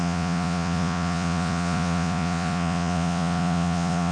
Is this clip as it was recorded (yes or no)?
no